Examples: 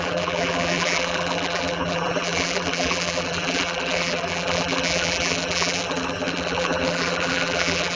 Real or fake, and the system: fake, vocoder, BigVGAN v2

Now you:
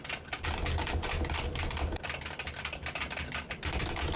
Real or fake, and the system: real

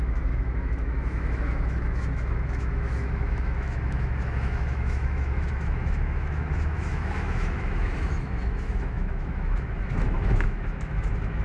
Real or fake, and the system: fake, autoencoder, DAC-VAE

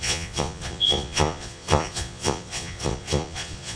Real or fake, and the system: fake, vocoder, Vocos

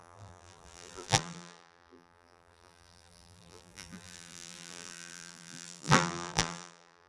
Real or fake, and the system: fake, vocoder, BigVGAN v2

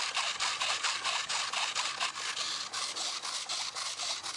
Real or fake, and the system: real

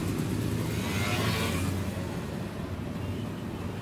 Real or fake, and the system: real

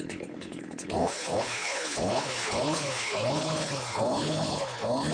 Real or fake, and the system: fake, codec, HILCodec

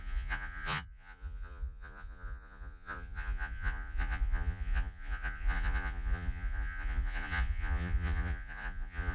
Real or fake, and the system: fake, vocoder, Vocos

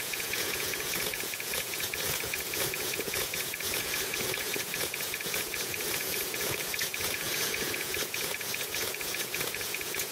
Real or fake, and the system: fake, vocoder, Vocos